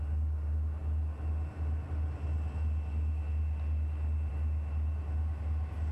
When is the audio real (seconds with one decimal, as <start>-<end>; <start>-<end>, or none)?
0.0-5.9